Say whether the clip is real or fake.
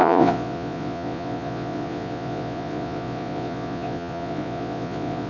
fake